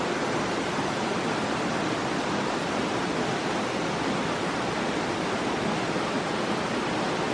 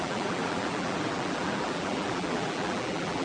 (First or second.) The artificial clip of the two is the second